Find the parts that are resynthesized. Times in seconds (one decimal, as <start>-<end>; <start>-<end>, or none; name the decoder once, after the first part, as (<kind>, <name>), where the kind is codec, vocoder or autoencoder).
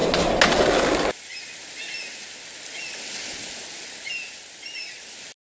none